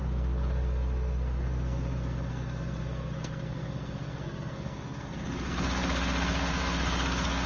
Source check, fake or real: fake